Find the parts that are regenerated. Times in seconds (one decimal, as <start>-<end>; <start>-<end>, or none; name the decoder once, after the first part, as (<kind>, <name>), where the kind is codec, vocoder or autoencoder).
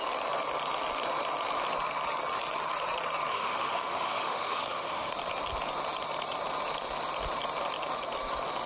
3.3-5.1 (autoencoder, DAC-VAE)